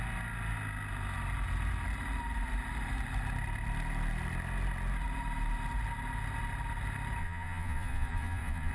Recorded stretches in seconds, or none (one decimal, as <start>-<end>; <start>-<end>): 0.0-7.2